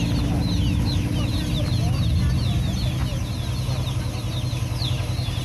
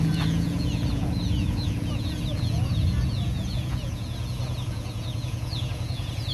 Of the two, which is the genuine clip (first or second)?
first